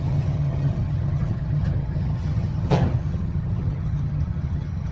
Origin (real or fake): fake